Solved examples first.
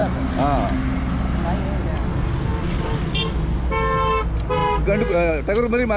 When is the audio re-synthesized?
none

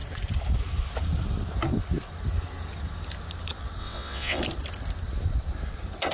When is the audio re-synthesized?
3.8-4.4 (vocoder, WaveNeXt)

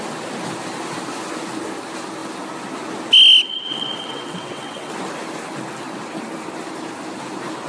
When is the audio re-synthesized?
3.5-4.9 (vocoder, WaveNeXt)

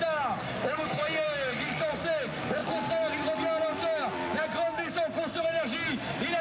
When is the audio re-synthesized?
none

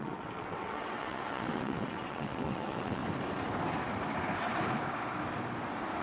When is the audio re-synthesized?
0.0-3.0 (vocoder, WaveNeXt)

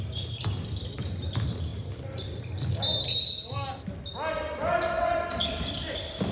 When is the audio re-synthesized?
none